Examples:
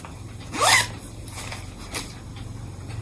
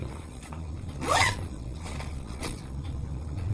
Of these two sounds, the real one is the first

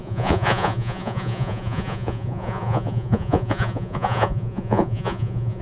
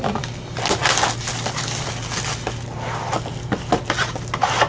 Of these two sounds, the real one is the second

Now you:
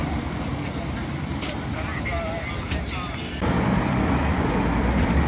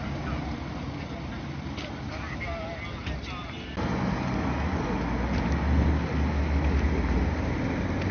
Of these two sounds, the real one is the second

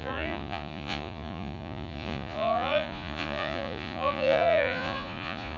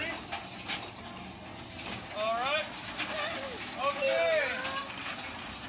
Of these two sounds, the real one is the second